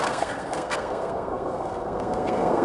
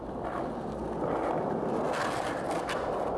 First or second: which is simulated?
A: first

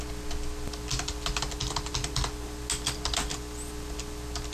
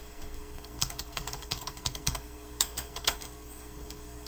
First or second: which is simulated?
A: second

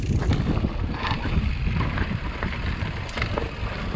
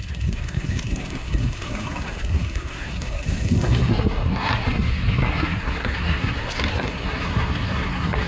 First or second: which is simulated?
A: second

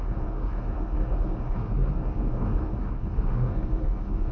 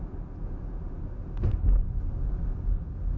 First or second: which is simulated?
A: first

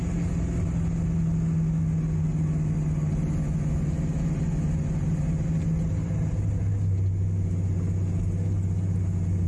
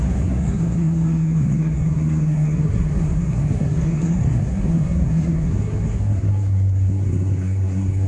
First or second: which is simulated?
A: second